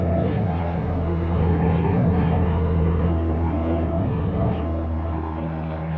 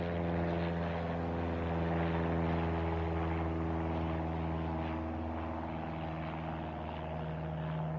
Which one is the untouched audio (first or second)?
second